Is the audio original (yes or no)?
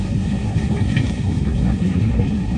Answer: no